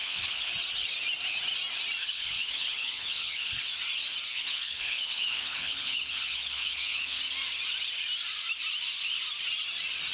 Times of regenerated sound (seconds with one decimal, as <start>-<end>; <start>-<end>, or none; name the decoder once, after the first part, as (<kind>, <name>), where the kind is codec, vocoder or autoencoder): 0.0-0.5 (codec, HILCodec); 2.0-3.6; 4.3-7.2